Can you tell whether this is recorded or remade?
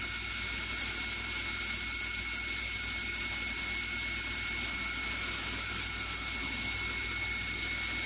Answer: recorded